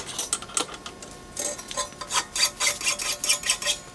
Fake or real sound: real